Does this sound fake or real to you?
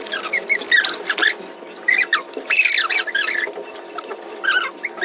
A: real